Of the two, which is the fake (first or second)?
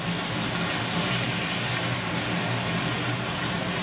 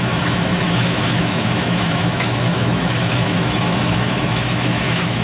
second